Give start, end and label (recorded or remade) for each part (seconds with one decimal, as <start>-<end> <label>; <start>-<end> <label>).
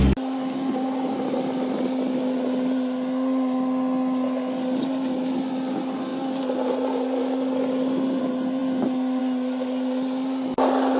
0.0-11.0 recorded